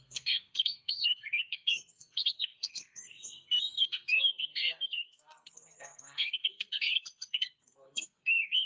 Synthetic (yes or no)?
yes